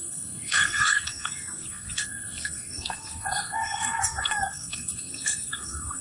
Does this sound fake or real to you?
fake